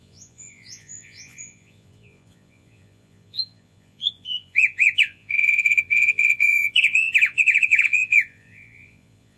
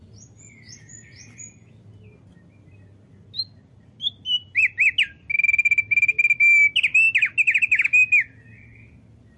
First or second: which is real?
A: second